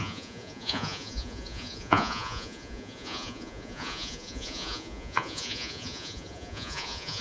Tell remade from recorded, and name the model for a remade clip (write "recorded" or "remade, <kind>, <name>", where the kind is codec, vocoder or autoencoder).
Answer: remade, vocoder, Vocos